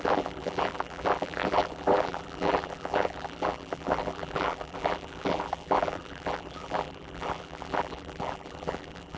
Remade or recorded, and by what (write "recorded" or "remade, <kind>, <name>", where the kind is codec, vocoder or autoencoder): remade, vocoder, BigVGAN v2